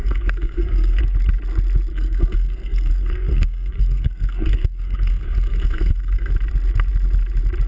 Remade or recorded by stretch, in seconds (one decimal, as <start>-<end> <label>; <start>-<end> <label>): 0.0-1.0 remade; 1.0-1.9 recorded; 1.9-6.3 remade; 6.3-7.7 recorded